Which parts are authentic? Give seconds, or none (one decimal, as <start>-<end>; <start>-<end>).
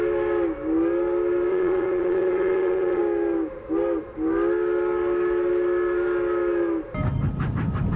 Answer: 0.0-1.5; 3.0-8.0